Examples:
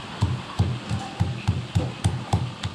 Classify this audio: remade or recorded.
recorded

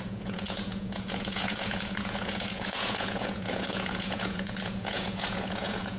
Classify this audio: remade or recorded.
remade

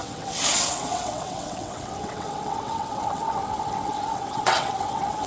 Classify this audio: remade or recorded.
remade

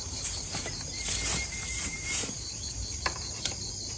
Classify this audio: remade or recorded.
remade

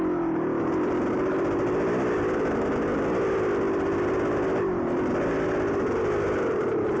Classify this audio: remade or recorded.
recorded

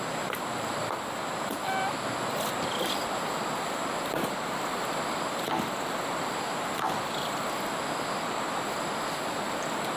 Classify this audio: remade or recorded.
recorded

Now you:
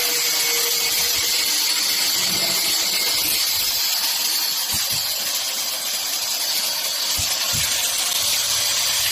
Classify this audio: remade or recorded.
recorded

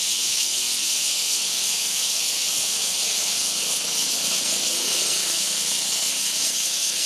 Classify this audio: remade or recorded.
remade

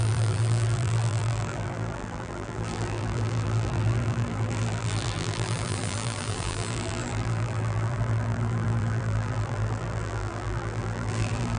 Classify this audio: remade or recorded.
remade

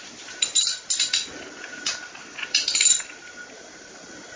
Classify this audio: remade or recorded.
recorded